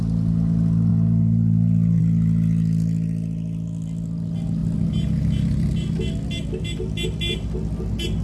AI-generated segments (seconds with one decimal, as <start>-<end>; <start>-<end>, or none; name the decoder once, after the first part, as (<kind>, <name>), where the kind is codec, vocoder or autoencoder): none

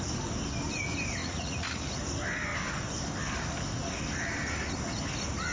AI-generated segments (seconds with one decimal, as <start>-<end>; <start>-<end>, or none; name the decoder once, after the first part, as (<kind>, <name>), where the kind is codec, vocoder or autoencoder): 1.2-1.9 (vocoder, Vocos)

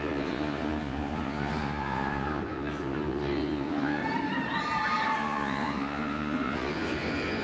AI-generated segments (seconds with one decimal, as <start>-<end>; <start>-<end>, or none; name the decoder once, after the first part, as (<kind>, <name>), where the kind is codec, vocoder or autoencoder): 0.0-4.0 (vocoder, Vocos); 5.2-7.4

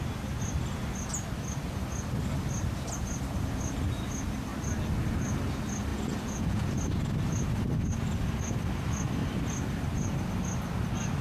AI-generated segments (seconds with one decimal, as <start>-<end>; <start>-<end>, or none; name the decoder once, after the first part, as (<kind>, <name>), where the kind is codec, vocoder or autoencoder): 5.9-6.7 (vocoder, Vocos)

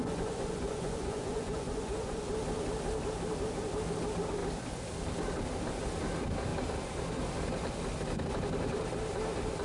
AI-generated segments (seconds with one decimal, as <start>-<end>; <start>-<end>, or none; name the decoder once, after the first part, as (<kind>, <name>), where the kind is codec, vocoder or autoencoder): 0.0-2.3 (vocoder, Vocos)